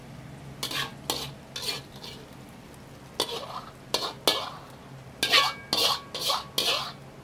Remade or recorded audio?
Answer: recorded